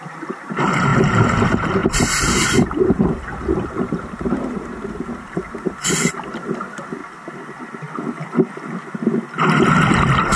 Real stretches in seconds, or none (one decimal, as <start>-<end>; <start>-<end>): 7.0-10.4